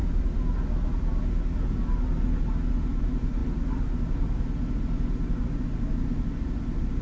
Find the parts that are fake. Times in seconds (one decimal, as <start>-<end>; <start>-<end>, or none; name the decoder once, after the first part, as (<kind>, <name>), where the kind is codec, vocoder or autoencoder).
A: none